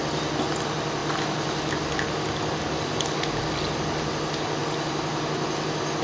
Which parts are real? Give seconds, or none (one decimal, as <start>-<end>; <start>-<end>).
0.0-6.0